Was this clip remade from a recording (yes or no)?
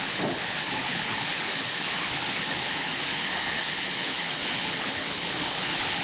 yes